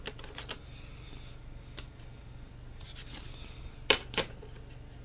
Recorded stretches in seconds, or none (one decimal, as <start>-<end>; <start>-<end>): 0.0-5.0